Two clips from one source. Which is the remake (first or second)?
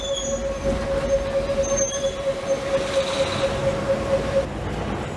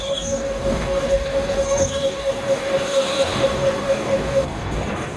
second